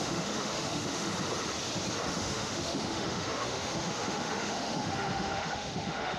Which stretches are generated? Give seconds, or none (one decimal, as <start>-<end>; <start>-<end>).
0.0-1.1; 2.1-6.2